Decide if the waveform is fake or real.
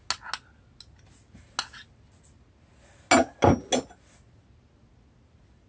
real